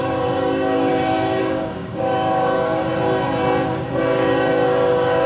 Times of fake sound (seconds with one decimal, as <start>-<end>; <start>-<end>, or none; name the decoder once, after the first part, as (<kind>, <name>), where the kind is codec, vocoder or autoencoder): 0.0-2.8 (codec, DAC); 4.0-5.3